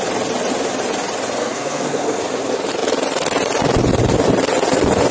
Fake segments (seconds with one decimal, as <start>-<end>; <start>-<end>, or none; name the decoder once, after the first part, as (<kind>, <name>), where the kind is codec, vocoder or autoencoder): 1.4-2.2 (codec, SNAC)